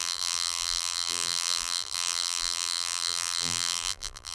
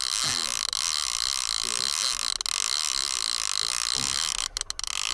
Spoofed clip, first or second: first